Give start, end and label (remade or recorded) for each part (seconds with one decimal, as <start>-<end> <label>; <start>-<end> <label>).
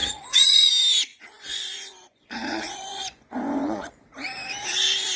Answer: 0.0-0.7 remade; 0.7-1.1 recorded; 1.1-4.0 remade; 4.0-5.2 recorded